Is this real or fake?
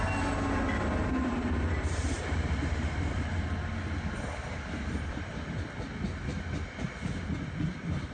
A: real